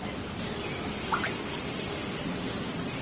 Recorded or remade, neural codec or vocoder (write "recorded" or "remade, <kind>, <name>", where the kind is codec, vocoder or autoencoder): recorded